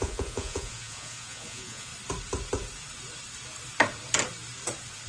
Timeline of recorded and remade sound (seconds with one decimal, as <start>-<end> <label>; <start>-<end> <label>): 0.0-1.9 remade; 1.9-5.1 recorded